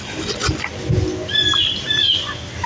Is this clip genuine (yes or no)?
yes